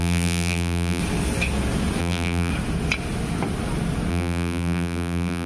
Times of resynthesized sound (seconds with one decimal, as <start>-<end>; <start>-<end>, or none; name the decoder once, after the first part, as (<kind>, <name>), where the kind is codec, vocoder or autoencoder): 0.0-1.0 (vocoder, BigVGAN v2); 2.0-2.5; 4.1-5.5